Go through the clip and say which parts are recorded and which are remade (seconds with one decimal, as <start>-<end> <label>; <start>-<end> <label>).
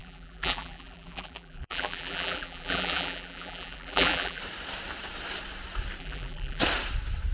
0.0-4.4 remade; 4.4-6.0 recorded; 6.0-6.6 remade; 6.6-7.3 recorded